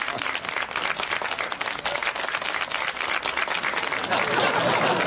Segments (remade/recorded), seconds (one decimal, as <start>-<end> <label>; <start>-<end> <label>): 0.0-5.1 recorded